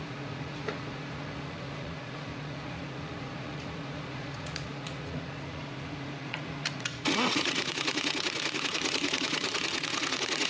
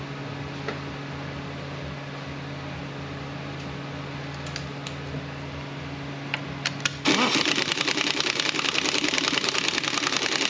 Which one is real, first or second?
second